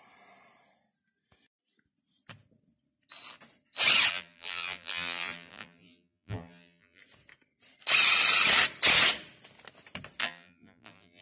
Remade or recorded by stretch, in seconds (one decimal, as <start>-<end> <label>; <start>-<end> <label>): 0.0-4.1 recorded; 4.1-7.0 remade; 7.0-10.2 recorded; 10.2-11.2 remade